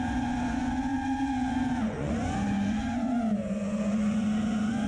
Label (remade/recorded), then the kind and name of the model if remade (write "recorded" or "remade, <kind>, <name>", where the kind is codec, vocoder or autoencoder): remade, vocoder, Vocos